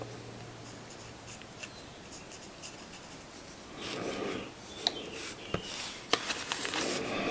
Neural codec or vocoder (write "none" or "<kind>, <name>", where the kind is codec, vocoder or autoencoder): none